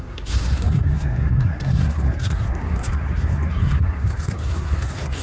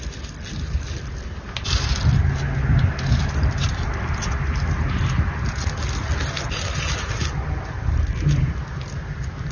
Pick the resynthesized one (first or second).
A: first